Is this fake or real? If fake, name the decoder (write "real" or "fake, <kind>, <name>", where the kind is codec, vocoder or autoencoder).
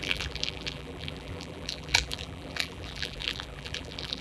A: fake, vocoder, BigVGAN v2